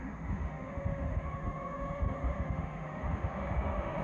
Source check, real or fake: fake